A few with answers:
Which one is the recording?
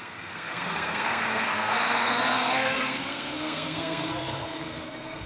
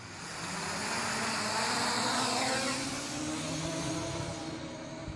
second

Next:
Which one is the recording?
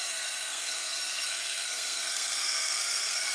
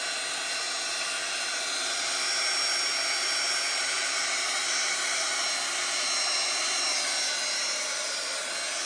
second